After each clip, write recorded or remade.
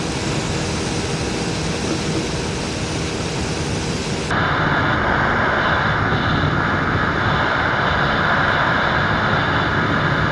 recorded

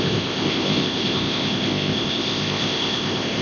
remade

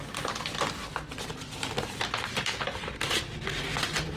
recorded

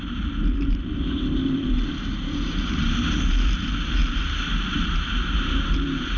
remade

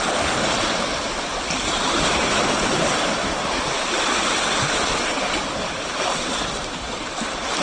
recorded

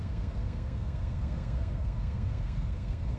remade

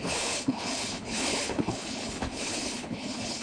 remade